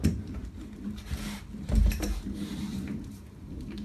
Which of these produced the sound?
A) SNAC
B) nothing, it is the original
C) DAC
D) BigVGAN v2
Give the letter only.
D